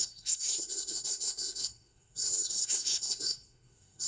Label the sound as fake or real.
fake